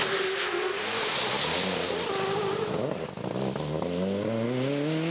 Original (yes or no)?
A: yes